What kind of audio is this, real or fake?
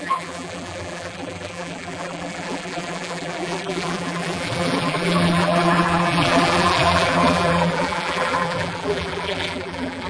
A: fake